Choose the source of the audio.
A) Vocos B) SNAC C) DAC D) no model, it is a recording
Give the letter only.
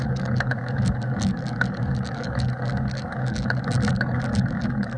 C